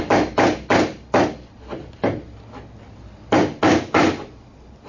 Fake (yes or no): no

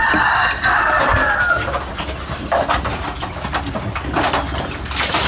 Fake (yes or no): no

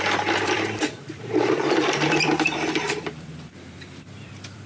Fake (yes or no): yes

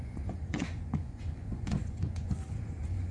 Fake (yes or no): yes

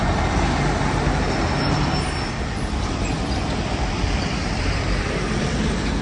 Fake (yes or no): yes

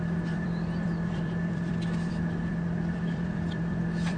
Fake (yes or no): yes